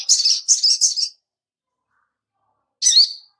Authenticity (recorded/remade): recorded